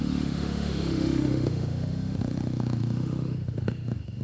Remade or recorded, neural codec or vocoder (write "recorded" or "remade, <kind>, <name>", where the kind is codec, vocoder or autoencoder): remade, autoencoder, DAC-VAE